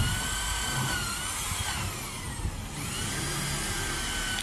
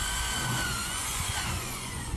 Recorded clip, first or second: first